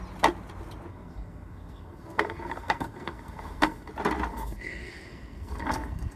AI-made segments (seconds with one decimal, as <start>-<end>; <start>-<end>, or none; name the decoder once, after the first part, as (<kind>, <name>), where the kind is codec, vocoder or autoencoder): 0.9-3.9 (codec, SNAC); 4.3-6.2

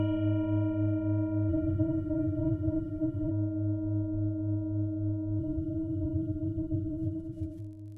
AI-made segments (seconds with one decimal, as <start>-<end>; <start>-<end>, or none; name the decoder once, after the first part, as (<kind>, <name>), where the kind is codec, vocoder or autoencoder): 1.5-3.3 (vocoder, BigVGAN v2); 5.4-7.6

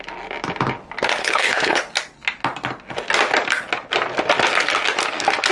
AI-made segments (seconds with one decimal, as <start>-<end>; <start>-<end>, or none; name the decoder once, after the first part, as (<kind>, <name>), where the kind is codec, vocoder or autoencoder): 1.2-1.8 (codec, HILCodec)

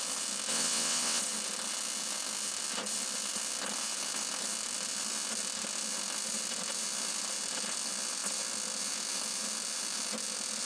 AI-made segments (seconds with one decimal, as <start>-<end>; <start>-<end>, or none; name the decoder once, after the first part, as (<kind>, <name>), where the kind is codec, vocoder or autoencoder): 0.5-1.2 (vocoder, WaveNeXt)

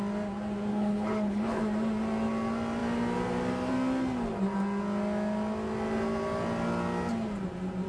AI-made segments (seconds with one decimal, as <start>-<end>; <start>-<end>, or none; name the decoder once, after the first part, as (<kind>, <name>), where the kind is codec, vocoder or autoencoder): 0.7-1.6 (codec, HILCodec)